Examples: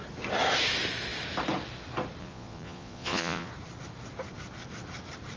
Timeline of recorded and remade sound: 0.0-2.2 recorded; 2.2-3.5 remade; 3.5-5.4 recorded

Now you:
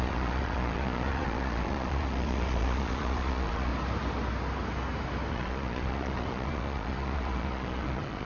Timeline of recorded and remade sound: 0.0-3.7 remade; 3.7-5.3 recorded; 5.3-8.3 remade